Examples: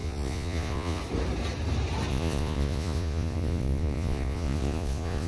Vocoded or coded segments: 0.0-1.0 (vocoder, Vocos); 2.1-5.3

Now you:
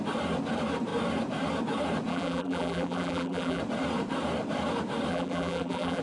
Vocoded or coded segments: 2.1-3.6 (vocoder, BigVGAN v2); 5.1-6.0

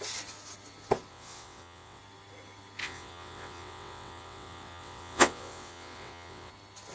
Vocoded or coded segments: 1.1-2.0 (vocoder, WaveNeXt); 2.8-6.5